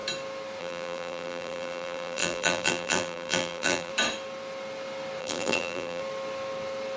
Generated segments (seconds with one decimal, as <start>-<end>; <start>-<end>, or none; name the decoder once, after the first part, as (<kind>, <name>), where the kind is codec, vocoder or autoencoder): 0.6-3.9 (vocoder, BigVGAN v2); 5.2-6.0